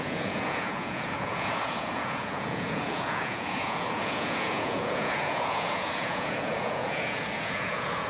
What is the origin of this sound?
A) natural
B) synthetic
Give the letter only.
B